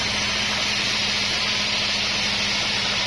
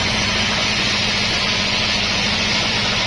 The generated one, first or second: second